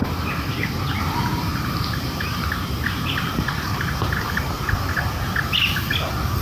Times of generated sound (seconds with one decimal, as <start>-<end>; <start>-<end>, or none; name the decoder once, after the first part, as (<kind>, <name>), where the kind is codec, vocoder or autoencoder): 0.0-1.0 (vocoder, BigVGAN v2); 1.5-4.2